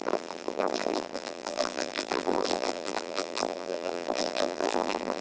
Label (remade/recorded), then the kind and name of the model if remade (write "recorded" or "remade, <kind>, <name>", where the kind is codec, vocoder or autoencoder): remade, vocoder, BigVGAN v2